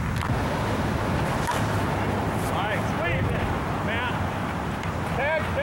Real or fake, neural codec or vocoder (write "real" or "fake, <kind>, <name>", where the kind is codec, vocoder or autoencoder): real